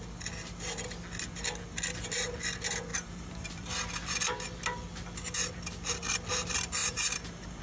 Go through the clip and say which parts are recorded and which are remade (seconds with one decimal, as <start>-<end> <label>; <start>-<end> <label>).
0.0-2.9 recorded; 2.9-3.7 remade; 3.7-6.8 recorded; 6.8-7.6 remade